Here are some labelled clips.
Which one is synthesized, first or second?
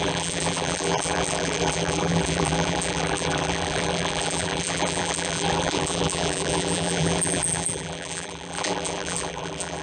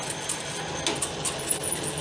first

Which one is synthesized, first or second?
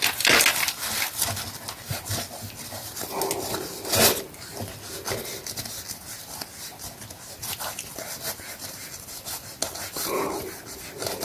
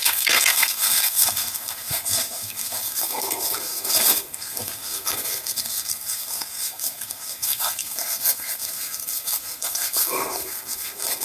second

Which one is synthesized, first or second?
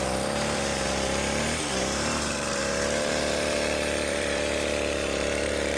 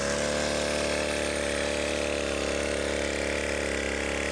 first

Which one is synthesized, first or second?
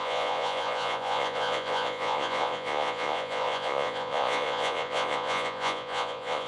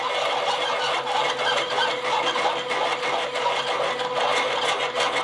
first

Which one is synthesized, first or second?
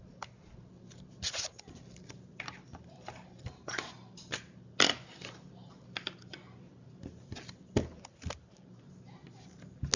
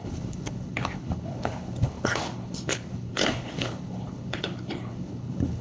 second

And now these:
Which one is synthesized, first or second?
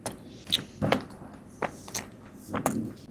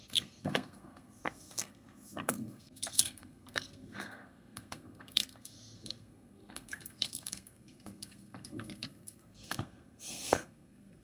second